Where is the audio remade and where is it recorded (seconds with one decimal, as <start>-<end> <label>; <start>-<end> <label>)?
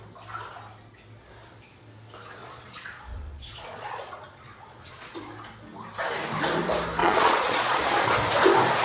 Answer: 0.0-2.4 recorded; 2.4-5.1 remade; 5.1-7.0 recorded; 7.0-8.1 remade; 8.1-8.8 recorded